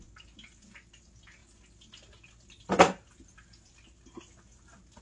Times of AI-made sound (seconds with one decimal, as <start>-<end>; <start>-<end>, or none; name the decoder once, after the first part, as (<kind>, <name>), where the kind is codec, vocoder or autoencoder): none